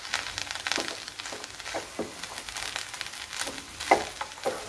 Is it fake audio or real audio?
real